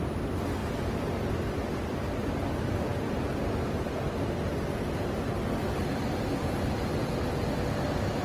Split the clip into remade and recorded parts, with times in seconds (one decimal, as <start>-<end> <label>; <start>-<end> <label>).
0.0-0.6 remade; 0.6-1.3 recorded; 1.3-8.2 remade